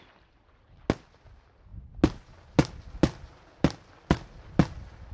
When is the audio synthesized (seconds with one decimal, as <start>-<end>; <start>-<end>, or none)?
none